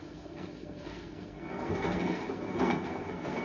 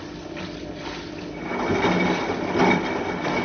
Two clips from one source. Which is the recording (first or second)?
second